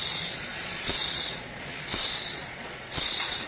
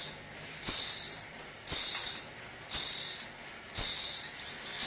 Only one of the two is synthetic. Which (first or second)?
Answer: first